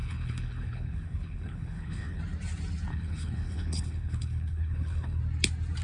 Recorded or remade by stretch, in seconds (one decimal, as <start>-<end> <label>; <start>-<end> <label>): 0.0-2.2 remade; 2.2-2.9 recorded; 2.9-5.2 remade; 5.2-5.8 recorded